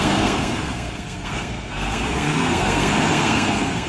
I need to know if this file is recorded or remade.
remade